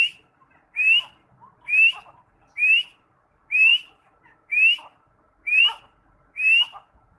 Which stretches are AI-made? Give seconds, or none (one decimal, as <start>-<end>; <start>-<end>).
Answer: none